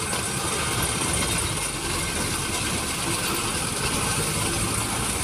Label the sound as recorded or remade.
recorded